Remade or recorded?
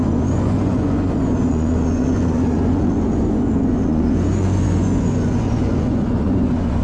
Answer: remade